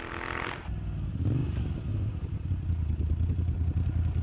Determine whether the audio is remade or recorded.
recorded